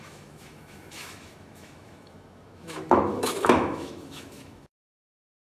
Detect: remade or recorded remade